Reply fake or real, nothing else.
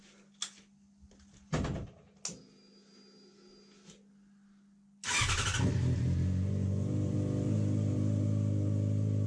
real